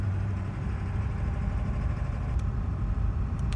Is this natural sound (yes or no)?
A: no